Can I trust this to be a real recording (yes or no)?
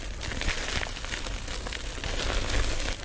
yes